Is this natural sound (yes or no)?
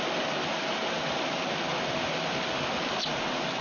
yes